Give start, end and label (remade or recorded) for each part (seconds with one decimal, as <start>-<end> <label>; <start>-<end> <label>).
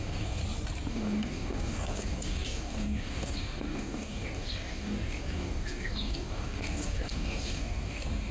0.0-0.4 remade; 0.4-0.9 recorded; 0.9-8.3 remade